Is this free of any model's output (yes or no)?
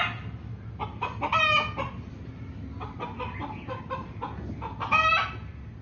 yes